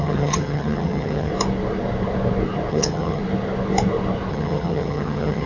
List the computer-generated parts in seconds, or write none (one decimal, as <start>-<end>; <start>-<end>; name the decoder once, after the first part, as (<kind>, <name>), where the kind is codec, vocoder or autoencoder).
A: 0.0-1.3 (vocoder, HiFi-GAN); 2.7-3.2; 4.3-5.5